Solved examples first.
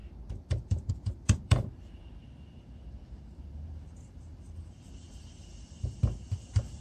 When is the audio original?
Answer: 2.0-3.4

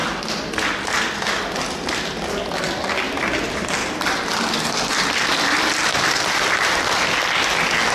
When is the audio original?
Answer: 0.0-3.8; 5.1-5.9; 6.8-7.9

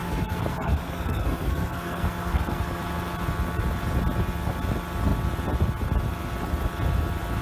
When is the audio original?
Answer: 2.8-7.4

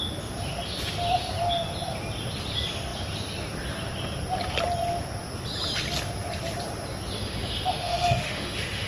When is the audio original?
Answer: 0.0-7.2

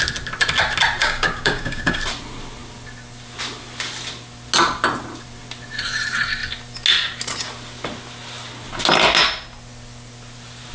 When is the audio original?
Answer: 0.0-1.0; 2.0-10.7

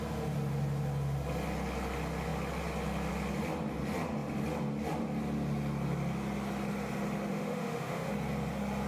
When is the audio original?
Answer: 0.0-7.3; 8.1-8.9